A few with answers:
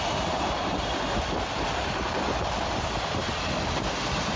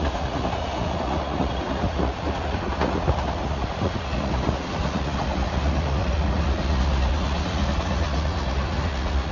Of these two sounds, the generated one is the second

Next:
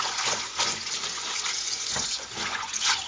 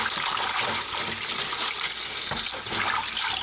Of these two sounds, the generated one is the first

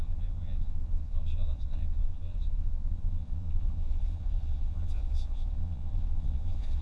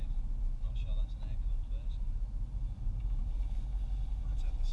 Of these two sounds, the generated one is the first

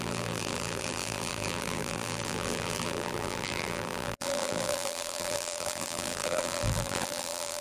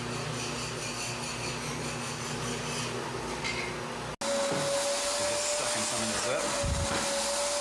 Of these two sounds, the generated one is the first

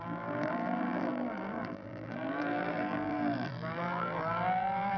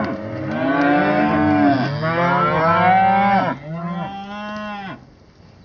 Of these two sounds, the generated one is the first